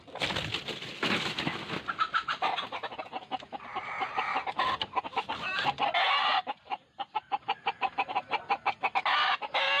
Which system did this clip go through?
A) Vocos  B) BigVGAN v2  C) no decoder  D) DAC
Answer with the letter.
C